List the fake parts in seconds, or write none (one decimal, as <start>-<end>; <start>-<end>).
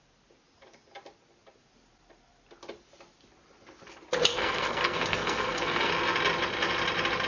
4.3-5.9